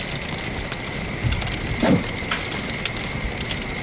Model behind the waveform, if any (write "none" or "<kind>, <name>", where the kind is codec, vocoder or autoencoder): none